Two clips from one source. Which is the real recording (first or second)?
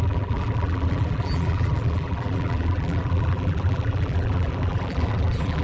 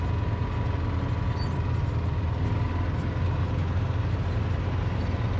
second